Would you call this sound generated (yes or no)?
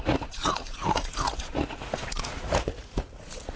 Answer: yes